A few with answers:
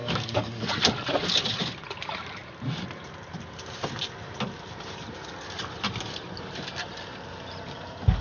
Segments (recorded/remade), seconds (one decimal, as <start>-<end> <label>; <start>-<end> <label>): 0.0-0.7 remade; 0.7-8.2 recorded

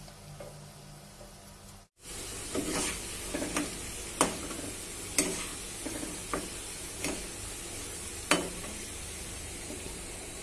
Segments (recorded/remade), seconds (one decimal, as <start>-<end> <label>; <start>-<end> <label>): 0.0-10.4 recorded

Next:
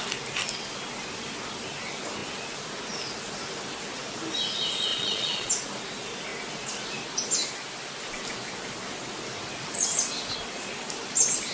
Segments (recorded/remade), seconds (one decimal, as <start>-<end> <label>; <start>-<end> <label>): 0.0-4.9 recorded; 4.9-5.5 remade; 5.5-11.5 recorded

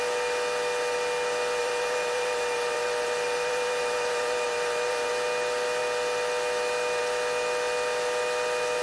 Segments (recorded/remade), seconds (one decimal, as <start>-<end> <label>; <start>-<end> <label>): 0.0-1.6 recorded; 1.6-5.1 remade; 5.1-8.8 recorded

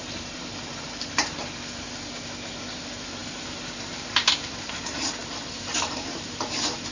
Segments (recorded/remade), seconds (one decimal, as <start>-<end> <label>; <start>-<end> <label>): 0.0-1.4 remade; 1.4-2.7 recorded; 2.7-6.9 remade